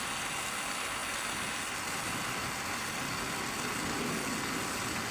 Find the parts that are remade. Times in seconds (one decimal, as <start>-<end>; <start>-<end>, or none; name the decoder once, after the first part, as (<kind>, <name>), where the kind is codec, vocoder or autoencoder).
none